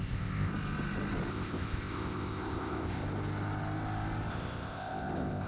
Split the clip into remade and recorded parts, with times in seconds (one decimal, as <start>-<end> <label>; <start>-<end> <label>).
0.0-0.5 remade; 0.5-1.3 recorded; 1.3-3.0 remade; 3.0-4.3 recorded; 4.3-5.5 remade